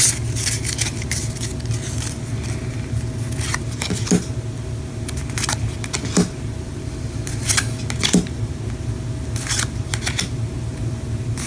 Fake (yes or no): no